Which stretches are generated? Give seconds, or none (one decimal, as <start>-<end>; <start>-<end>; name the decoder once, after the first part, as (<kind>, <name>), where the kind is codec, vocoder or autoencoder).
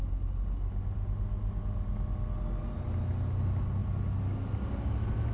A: none